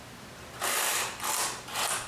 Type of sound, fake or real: real